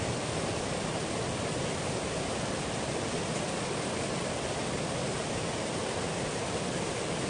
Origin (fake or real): real